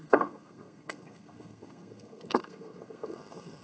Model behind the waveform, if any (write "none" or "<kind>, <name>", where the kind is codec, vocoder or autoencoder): codec, SNAC